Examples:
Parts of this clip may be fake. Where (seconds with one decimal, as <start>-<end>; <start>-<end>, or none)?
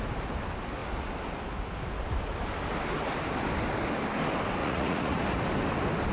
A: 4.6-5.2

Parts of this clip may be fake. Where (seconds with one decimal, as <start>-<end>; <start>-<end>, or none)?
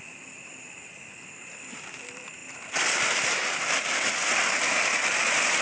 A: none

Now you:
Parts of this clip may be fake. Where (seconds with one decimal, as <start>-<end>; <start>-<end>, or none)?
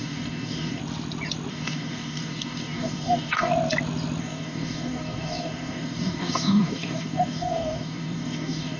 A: 0.0-0.8; 1.5-3.5; 4.2-8.8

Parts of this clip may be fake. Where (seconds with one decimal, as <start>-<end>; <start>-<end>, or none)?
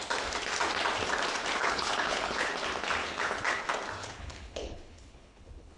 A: 1.6-2.5; 3.0-3.6; 4.0-5.8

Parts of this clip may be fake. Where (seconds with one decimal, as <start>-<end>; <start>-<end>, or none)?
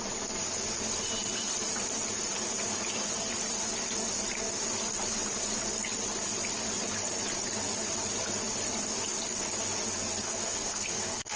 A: 10.2-11.4